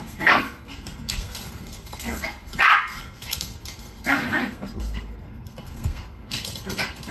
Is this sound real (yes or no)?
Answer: no